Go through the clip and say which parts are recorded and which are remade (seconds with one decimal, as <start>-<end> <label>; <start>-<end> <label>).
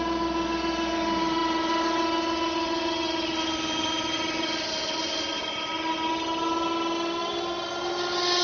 0.0-8.4 recorded